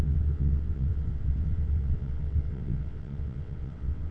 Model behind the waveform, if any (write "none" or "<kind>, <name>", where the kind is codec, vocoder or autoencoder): vocoder, WaveNeXt